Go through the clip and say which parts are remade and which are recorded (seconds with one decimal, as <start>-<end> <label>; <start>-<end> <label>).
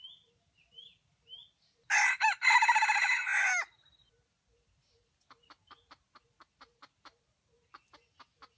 0.0-8.6 recorded